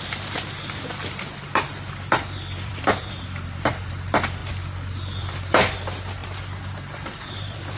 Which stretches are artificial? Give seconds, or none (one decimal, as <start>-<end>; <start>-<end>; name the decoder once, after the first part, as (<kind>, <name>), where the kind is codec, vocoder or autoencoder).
0.0-4.4 (vocoder, BigVGAN v2); 5.2-7.8